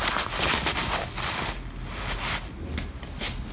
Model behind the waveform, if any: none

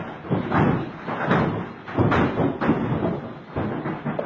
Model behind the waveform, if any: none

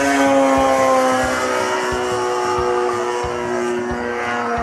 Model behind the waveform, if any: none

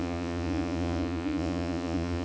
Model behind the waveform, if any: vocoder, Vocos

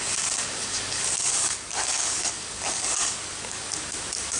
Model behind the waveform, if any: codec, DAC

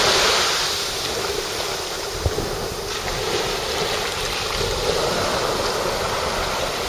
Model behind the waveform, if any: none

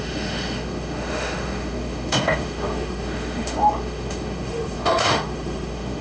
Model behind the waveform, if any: autoencoder, DAC-VAE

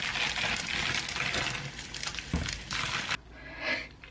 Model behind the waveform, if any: none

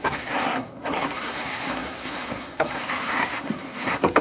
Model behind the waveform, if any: codec, SNAC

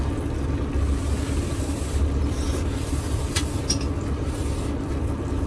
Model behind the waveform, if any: none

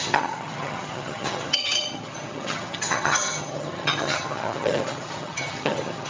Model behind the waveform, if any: vocoder, HiFi-GAN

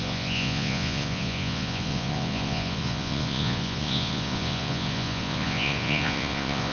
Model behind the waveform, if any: vocoder, Vocos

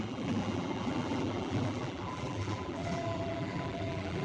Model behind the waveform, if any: vocoder, BigVGAN v2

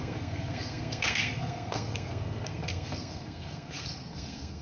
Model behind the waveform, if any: codec, SNAC